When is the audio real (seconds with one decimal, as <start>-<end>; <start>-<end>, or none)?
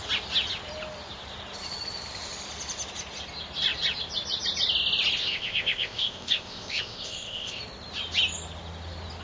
0.0-5.2; 7.6-9.2